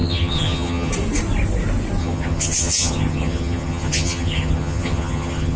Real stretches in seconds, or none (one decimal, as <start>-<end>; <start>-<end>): 0.9-2.0